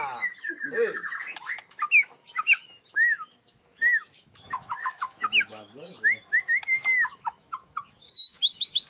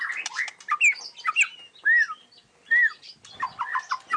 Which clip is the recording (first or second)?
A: second